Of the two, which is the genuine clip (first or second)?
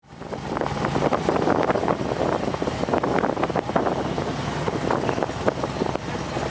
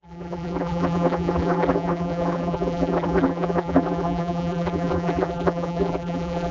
first